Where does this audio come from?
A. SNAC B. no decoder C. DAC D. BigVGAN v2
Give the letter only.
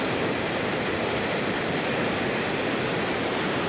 D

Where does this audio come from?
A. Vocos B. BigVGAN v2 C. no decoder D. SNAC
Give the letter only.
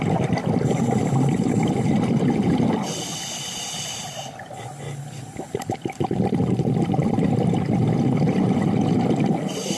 C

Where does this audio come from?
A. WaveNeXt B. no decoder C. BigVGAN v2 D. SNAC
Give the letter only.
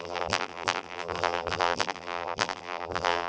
C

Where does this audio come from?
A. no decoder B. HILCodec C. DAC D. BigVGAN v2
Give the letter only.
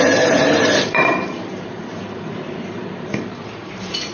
D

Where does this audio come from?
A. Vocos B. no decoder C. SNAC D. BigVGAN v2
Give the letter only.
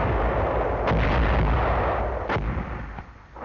B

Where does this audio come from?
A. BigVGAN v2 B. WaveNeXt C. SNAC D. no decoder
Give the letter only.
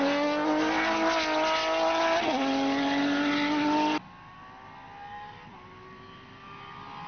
D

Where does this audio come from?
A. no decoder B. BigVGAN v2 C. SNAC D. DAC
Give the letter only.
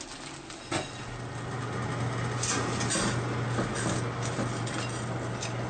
A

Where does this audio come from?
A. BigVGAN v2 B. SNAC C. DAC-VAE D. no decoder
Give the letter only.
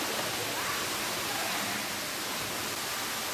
D